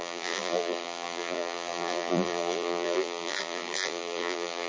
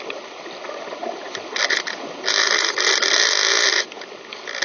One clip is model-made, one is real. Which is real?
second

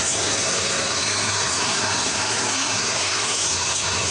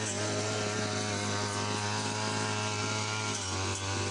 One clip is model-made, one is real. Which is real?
second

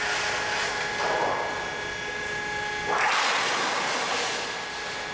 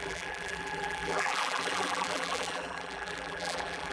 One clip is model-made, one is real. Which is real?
first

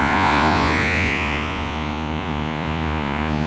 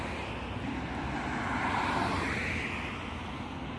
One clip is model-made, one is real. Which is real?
second